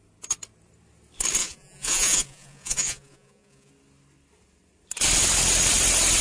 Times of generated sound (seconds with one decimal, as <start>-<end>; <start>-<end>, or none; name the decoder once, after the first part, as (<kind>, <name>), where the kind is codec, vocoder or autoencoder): 1.4-3.7 (vocoder, Vocos)